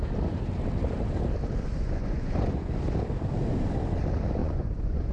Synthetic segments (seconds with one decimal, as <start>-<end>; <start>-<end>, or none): 1.7-2.7; 4.4-5.1